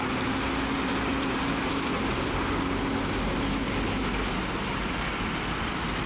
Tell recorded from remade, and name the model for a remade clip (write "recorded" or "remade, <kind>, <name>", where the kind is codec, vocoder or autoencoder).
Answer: recorded